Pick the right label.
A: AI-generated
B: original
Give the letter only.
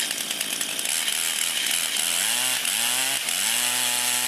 B